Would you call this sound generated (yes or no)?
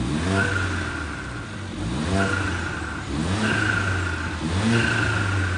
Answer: no